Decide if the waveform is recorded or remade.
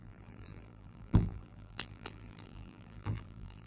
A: remade